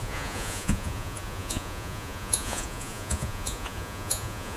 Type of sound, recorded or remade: remade